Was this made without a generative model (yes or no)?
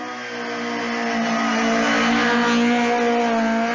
yes